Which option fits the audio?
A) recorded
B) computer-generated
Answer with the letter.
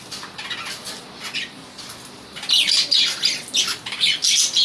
A